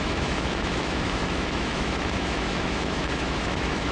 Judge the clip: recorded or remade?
remade